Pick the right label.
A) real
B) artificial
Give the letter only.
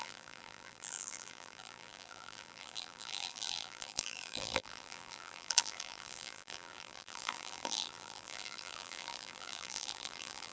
B